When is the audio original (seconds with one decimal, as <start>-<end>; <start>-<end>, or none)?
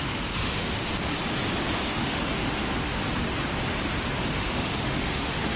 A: 0.8-1.8; 3.0-4.3